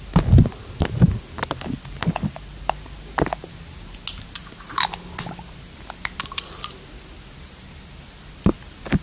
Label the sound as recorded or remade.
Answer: recorded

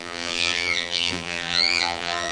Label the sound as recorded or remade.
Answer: remade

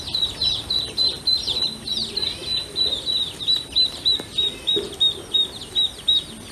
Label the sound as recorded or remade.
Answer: recorded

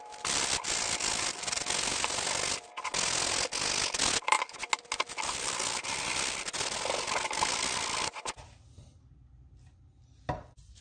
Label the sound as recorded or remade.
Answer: recorded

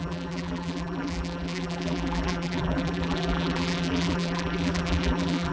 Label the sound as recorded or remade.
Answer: remade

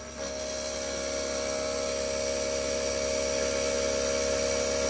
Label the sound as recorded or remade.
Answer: recorded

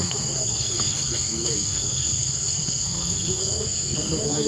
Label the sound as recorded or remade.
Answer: remade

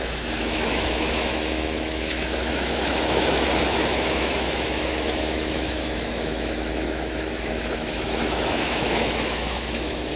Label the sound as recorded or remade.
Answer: remade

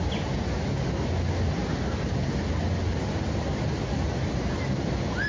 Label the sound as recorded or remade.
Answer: recorded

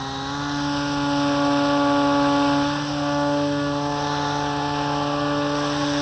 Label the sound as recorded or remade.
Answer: recorded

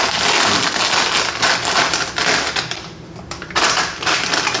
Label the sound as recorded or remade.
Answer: recorded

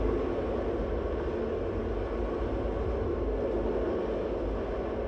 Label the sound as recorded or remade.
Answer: recorded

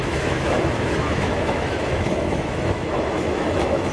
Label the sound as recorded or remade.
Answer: remade